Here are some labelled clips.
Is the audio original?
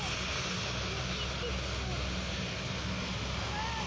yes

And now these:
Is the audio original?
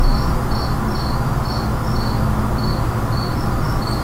yes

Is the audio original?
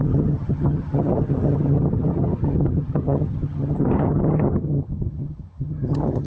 no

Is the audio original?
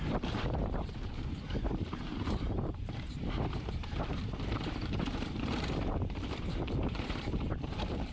no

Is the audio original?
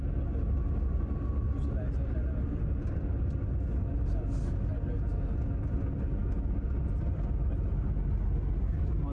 yes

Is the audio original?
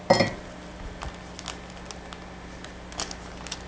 yes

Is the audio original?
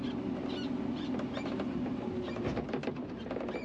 yes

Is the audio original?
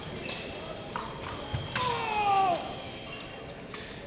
yes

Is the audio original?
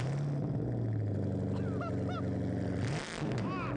yes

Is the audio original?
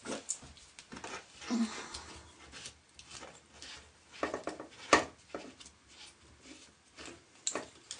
yes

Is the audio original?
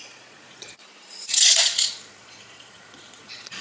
no